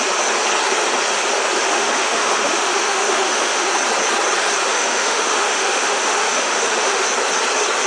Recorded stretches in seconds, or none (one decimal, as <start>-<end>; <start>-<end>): 0.0-1.7; 3.7-4.7; 7.0-7.9